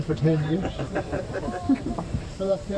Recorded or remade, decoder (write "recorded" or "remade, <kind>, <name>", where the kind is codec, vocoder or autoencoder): remade, vocoder, BigVGAN v2